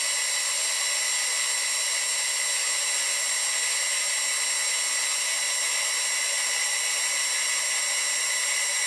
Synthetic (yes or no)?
no